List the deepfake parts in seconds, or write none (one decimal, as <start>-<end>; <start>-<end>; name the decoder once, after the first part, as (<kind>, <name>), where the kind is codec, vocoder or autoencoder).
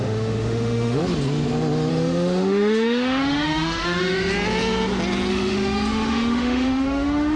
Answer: 0.0-1.0 (autoencoder, DAC-VAE); 1.9-4.3; 5.3-7.4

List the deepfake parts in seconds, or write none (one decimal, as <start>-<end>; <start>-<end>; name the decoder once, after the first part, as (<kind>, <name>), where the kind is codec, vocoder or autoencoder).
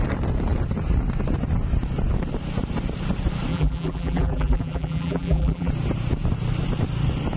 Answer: 3.5-5.7 (vocoder, BigVGAN v2)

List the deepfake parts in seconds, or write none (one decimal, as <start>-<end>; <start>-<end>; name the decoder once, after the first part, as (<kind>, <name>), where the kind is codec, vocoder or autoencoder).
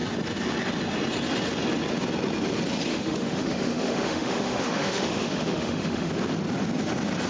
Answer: 2.9-6.1 (autoencoder, DAC-VAE)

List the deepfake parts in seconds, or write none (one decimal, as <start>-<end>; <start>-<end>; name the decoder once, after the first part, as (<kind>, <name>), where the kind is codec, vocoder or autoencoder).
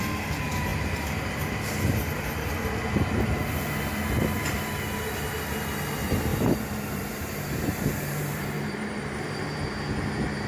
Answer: 0.7-1.4 (vocoder, BigVGAN v2); 6.3-9.7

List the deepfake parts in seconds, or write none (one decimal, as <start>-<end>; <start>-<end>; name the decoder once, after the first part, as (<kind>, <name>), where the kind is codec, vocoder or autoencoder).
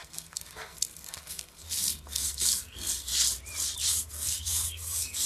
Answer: 0.0-3.1 (codec, SNAC); 3.9-5.3